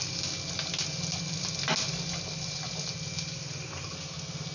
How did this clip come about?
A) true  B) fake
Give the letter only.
A